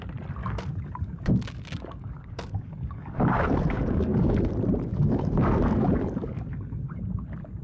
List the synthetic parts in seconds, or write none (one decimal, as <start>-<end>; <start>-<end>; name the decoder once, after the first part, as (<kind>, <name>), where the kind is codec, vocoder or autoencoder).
0.4-4.5 (codec, DAC); 4.9-7.0